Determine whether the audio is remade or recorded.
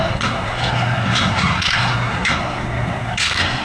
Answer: remade